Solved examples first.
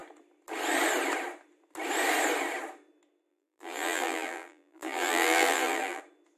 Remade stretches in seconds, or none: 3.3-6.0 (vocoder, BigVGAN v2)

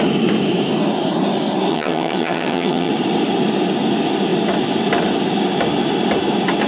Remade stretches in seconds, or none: 1.7-2.9 (vocoder, HiFi-GAN)

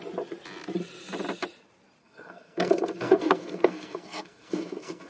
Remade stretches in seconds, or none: 2.0-5.1 (codec, SNAC)